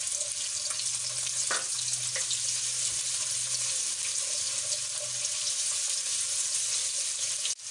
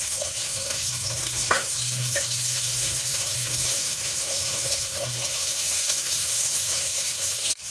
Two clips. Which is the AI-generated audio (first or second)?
second